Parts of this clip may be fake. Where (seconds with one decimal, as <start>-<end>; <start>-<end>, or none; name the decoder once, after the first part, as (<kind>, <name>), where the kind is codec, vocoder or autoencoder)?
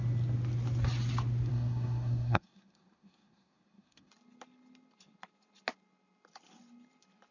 1.5-4.1 (codec, SNAC)